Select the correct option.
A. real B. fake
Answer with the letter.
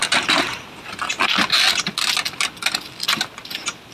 A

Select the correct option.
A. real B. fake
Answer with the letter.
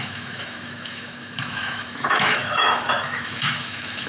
B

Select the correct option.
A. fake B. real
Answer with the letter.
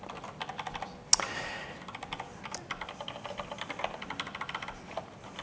B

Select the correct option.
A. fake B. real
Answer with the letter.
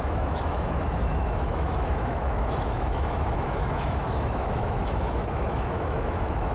A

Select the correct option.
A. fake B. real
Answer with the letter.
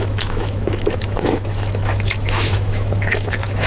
A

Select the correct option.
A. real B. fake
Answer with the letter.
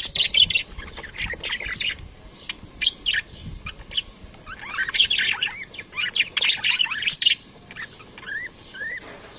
A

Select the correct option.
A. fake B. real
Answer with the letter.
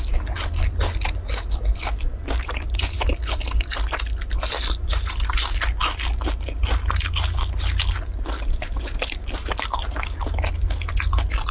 B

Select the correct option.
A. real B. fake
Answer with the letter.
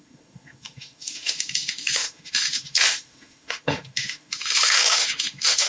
B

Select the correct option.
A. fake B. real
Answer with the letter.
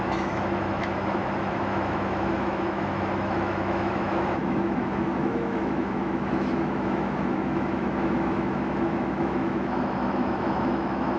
A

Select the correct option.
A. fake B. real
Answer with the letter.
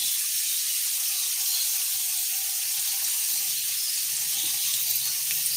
B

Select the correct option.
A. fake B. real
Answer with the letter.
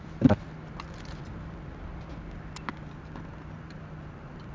B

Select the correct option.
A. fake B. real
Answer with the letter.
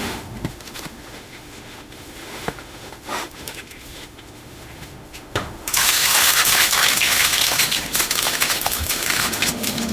A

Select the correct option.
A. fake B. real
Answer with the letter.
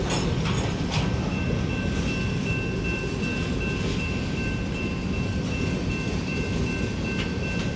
B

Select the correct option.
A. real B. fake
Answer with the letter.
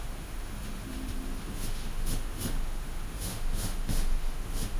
B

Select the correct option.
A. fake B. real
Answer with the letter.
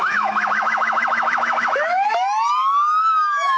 A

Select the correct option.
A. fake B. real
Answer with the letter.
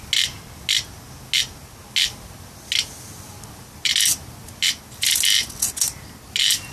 B